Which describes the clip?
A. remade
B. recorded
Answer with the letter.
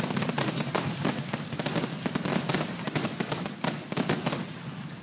B